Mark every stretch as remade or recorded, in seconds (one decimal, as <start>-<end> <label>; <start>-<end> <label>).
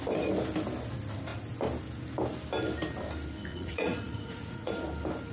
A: 0.0-3.5 recorded; 3.5-4.7 remade; 4.7-5.3 recorded